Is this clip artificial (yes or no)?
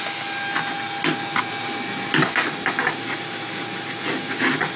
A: no